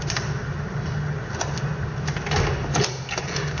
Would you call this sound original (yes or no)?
yes